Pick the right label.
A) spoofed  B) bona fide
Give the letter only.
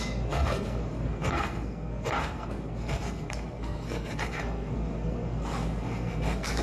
A